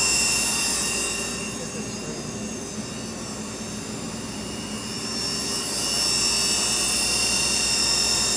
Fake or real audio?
real